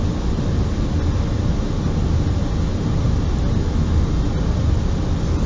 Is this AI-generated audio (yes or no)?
no